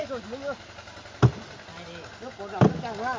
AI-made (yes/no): no